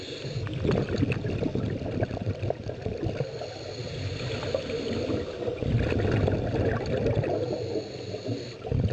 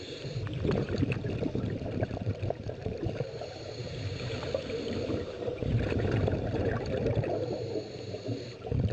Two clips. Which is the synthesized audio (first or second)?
second